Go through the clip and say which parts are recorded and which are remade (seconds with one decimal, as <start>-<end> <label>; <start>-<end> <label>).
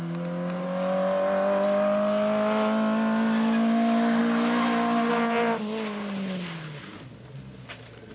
0.0-8.1 recorded